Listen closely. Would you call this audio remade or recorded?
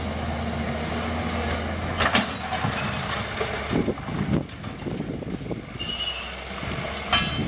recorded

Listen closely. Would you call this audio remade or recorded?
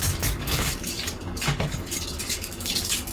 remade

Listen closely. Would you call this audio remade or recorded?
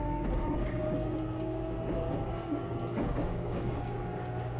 remade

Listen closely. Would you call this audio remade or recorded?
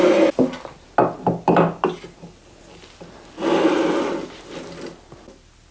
recorded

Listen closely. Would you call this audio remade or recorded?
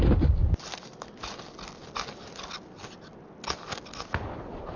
recorded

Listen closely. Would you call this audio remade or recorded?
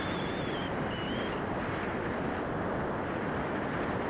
recorded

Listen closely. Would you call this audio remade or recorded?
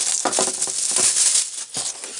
recorded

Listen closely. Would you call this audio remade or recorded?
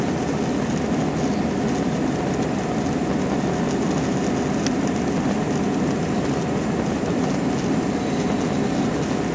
recorded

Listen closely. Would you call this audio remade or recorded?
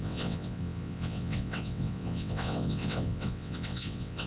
remade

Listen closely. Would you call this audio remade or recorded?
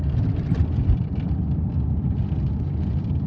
recorded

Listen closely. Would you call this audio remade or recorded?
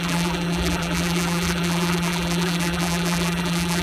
remade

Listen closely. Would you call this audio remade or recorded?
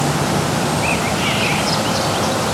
recorded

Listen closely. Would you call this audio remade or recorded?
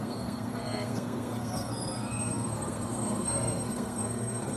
remade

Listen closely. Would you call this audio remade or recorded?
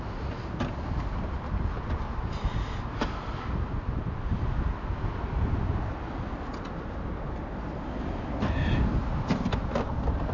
recorded